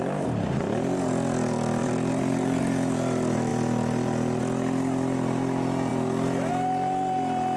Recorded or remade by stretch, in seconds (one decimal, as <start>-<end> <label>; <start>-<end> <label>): 0.0-1.8 recorded; 1.8-2.6 remade; 2.6-7.6 recorded